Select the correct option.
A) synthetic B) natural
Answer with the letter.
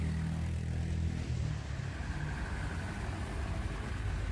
B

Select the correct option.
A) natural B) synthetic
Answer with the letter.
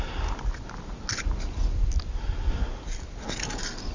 A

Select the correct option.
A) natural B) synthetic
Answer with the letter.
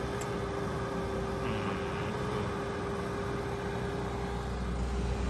A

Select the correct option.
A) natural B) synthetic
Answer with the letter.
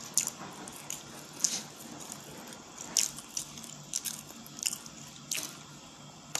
A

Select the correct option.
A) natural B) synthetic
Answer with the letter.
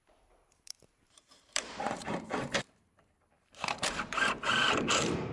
B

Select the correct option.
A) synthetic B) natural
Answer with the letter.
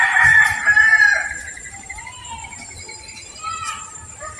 A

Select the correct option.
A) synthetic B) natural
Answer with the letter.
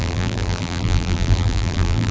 A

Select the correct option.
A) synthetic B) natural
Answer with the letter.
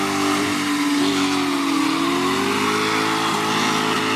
B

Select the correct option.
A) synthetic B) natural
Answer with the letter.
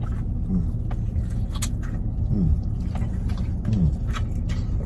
B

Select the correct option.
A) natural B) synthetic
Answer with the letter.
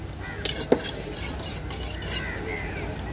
A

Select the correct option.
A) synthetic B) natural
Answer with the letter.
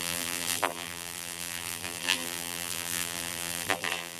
A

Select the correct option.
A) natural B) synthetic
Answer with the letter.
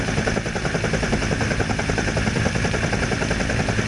A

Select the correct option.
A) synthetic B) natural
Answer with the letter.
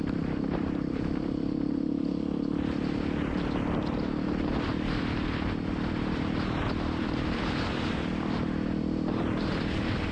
A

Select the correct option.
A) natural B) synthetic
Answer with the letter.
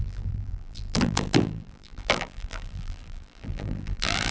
B